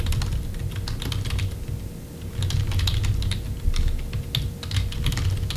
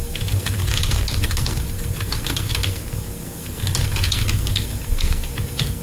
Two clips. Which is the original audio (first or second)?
first